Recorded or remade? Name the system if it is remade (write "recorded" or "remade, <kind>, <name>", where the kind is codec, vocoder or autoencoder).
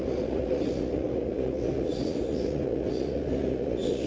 remade, vocoder, Vocos